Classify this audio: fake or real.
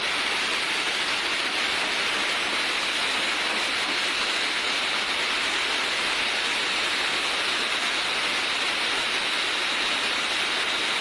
real